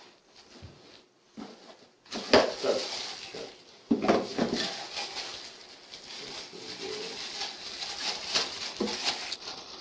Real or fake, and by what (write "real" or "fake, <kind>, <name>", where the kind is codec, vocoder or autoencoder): real